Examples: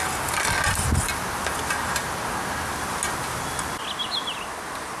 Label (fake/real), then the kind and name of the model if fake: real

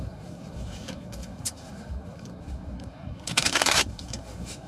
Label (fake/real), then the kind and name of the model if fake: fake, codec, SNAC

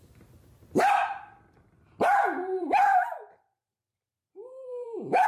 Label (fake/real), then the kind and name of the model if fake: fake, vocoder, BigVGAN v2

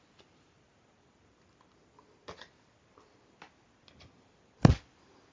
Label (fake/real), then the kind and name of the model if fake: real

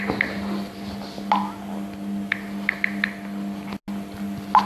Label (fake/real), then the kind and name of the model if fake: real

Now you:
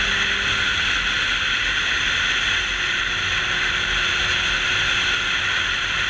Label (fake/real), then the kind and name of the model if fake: real